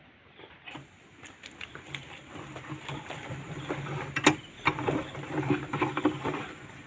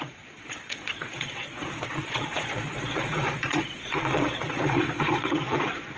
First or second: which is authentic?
first